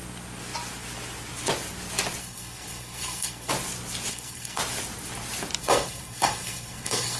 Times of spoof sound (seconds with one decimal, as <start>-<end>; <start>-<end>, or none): 2.2-3.5; 4.1-4.6; 5.6-7.2